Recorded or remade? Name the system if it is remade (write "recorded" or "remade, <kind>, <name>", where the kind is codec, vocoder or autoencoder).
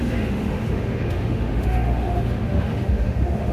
remade, autoencoder, DAC-VAE